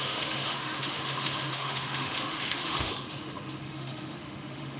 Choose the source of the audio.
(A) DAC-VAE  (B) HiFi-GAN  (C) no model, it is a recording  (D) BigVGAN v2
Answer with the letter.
A